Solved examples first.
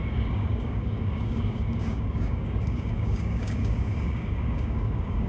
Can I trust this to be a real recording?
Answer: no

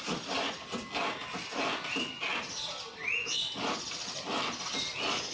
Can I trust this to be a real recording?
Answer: yes